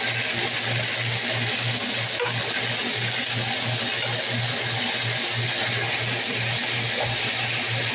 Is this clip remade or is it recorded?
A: recorded